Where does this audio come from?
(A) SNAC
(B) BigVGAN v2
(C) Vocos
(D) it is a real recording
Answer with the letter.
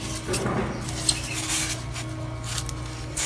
D